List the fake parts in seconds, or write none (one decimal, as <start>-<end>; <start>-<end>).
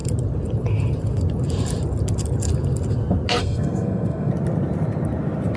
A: 3.4-4.3